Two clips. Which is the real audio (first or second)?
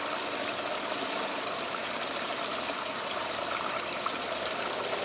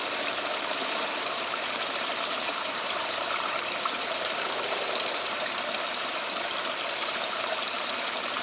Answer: first